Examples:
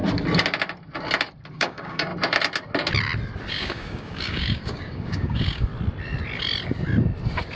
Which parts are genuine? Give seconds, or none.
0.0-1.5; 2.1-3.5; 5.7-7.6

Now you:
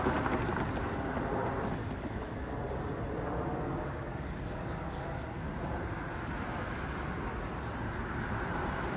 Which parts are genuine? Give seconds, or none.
0.0-1.8; 2.9-3.5; 5.5-9.0

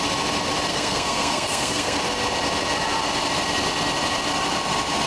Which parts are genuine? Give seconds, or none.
0.0-0.7; 2.0-5.1

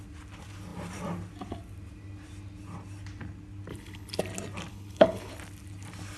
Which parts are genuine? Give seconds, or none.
0.0-3.7; 4.2-4.7; 5.3-6.2

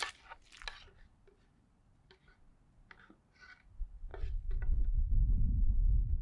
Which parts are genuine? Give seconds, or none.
0.0-6.2